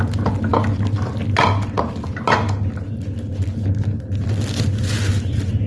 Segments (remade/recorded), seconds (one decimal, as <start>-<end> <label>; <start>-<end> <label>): 0.0-5.7 recorded